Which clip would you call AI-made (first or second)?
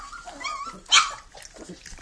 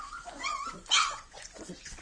second